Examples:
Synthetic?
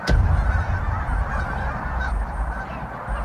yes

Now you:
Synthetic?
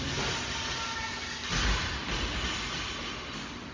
no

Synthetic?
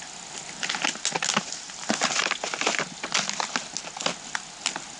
no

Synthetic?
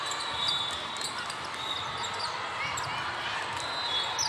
no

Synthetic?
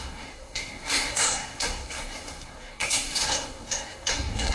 yes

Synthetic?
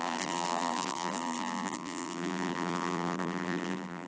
yes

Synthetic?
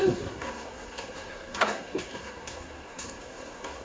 yes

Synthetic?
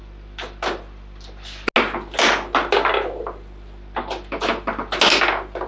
no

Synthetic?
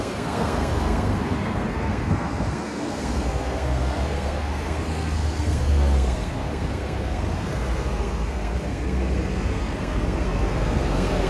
yes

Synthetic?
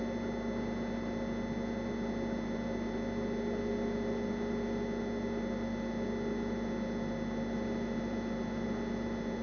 no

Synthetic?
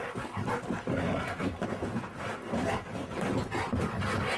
no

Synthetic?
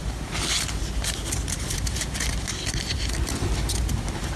no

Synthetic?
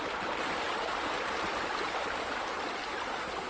no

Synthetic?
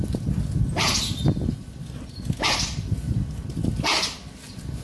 no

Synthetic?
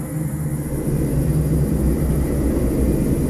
no